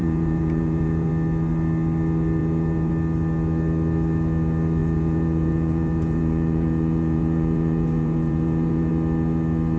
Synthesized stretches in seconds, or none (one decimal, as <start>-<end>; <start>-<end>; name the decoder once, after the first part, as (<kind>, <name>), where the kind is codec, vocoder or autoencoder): 0.0-1.1 (vocoder, Vocos); 2.4-2.9; 4.8-8.9